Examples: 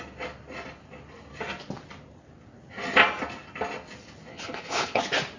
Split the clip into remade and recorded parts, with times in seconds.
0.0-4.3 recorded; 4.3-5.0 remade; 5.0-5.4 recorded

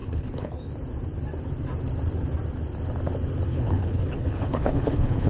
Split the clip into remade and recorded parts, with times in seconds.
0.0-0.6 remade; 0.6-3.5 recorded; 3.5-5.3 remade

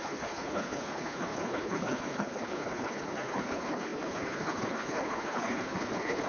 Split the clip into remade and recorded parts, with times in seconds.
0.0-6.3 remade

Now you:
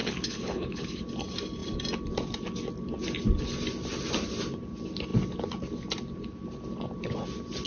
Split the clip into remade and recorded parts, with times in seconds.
0.0-1.0 remade; 1.0-7.7 recorded

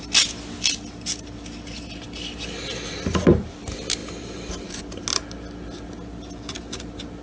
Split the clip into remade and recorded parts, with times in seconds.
0.0-7.2 recorded

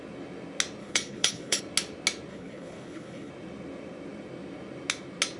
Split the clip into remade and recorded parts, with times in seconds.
0.0-0.8 recorded; 0.8-1.6 remade; 1.6-2.3 recorded; 2.3-3.3 remade; 3.3-5.4 recorded

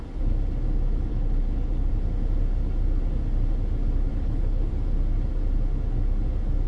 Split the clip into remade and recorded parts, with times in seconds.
0.0-1.1 recorded; 1.1-1.9 remade; 1.9-4.1 recorded; 4.1-4.7 remade; 4.7-6.7 recorded